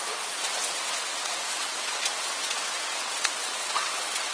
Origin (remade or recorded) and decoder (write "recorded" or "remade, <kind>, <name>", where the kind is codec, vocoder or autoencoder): remade, vocoder, WaveNeXt